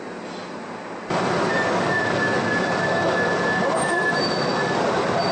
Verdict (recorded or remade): recorded